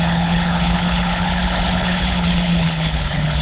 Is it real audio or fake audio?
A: fake